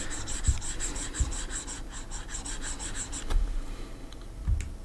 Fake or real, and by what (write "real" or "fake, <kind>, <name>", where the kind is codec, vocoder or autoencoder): real